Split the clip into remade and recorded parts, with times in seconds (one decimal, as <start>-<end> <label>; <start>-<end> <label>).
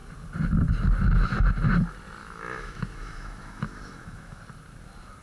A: 0.0-2.2 recorded; 2.2-4.4 remade; 4.4-5.2 recorded